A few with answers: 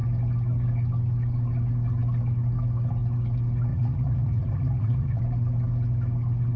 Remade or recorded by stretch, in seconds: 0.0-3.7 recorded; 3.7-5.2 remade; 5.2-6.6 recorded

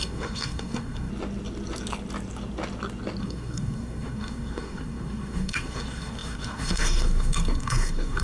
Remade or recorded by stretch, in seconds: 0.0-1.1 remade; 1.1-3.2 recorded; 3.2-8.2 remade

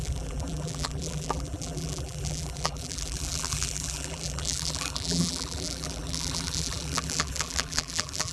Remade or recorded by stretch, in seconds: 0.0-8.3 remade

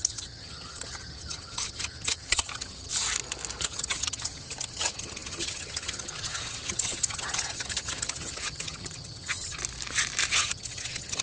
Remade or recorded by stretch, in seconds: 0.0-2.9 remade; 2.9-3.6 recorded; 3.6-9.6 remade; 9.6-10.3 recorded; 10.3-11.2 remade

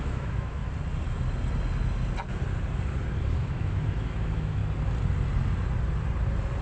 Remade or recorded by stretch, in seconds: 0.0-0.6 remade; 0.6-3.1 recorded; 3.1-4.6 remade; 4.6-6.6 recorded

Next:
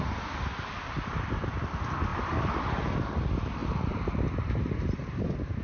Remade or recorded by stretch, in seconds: 0.0-2.1 recorded; 2.1-2.8 remade; 2.8-3.6 recorded; 3.6-5.6 remade

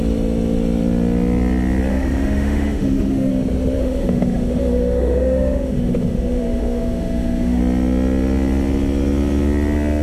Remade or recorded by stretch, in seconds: 0.0-1.9 recorded; 1.9-3.3 remade; 3.3-3.8 recorded; 3.8-7.6 remade; 7.6-10.0 recorded

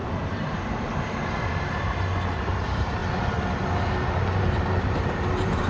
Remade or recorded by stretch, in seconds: 0.0-3.0 remade; 3.0-4.4 recorded; 4.4-5.7 remade